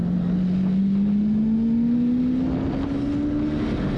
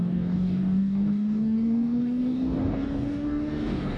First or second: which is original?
first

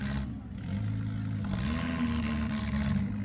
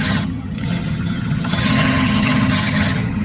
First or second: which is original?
first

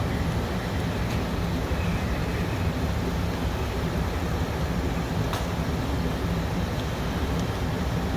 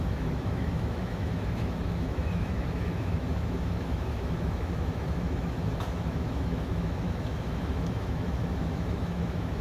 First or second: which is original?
first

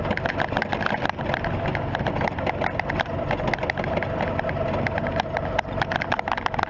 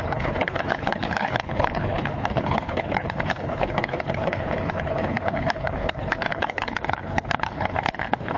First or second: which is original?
first